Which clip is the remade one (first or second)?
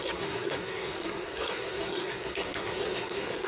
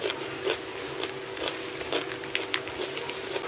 first